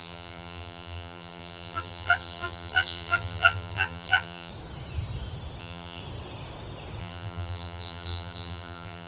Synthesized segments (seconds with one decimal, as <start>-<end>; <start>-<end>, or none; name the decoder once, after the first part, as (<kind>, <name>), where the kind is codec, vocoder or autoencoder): 0.0-4.5 (vocoder, BigVGAN v2); 5.6-6.0; 7.0-9.1